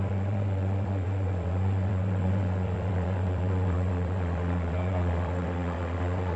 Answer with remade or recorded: remade